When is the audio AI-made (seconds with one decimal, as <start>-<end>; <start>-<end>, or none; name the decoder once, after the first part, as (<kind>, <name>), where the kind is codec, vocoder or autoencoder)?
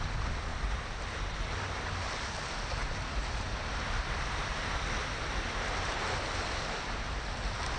none